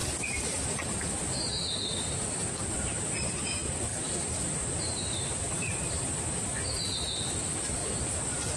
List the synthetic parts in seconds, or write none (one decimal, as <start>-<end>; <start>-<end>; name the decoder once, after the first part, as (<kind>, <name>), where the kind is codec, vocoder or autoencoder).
0.0-0.5 (vocoder, BigVGAN v2); 3.9-5.5; 7.8-8.6